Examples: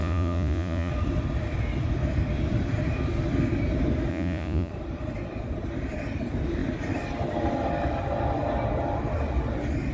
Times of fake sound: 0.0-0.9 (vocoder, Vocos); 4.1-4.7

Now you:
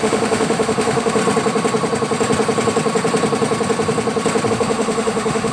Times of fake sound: 0.0-1.2 (autoencoder, DAC-VAE); 4.5-5.5

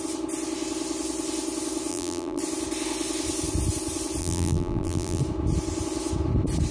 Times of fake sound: 1.9-2.4 (vocoder, BigVGAN v2); 4.2-5.2

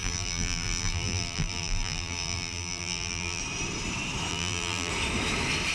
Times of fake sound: 0.0-3.4 (vocoder, BigVGAN v2); 4.3-4.9

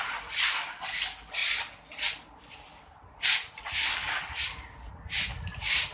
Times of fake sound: none